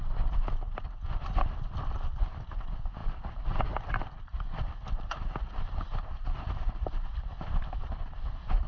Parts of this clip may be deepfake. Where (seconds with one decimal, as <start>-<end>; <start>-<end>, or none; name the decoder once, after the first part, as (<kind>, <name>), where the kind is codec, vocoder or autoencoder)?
none